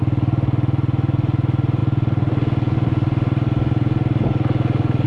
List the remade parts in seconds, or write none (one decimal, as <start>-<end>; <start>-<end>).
none